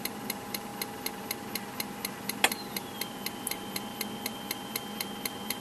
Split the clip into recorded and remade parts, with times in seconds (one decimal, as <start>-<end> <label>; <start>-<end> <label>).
0.0-5.6 recorded